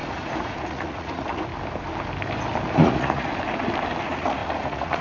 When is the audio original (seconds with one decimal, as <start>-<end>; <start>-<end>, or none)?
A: 1.5-2.7; 3.3-4.0